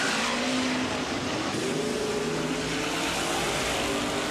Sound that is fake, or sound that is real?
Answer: real